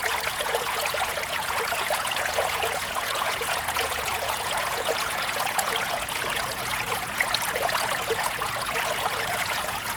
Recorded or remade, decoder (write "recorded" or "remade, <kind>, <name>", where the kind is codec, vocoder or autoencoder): remade, vocoder, Vocos